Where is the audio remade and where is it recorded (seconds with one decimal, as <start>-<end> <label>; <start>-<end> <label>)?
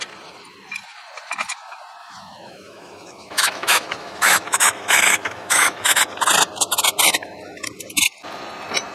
0.0-2.0 recorded; 2.0-6.0 remade; 6.0-8.9 recorded